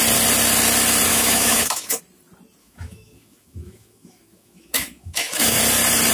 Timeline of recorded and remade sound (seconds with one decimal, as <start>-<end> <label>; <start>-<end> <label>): 0.0-1.1 recorded; 1.1-2.0 remade; 2.0-2.6 recorded; 2.6-5.6 remade; 5.6-6.1 recorded